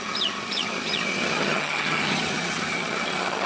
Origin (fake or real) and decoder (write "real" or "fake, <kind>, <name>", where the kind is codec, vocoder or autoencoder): fake, vocoder, HiFi-GAN